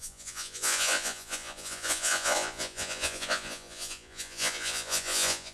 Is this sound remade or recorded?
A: remade